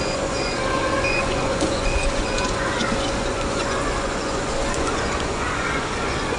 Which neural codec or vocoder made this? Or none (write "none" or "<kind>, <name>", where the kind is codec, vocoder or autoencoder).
vocoder, Vocos